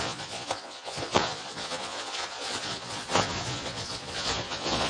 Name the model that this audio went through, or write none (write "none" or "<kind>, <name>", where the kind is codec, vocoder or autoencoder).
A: vocoder, Vocos